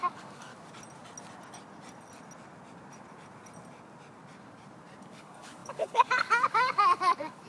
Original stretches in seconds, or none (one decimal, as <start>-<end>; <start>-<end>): 0.5-5.0